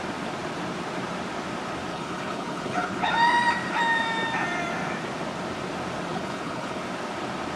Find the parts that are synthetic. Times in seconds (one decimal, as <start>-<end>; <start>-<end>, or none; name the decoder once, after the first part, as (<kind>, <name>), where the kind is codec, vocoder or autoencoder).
1.9-3.1 (codec, HILCodec); 6.1-6.8